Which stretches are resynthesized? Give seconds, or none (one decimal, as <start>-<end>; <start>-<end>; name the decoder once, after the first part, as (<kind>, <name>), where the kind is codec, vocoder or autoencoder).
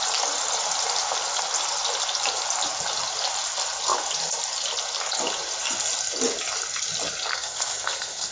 7.3-8.3 (codec, SNAC)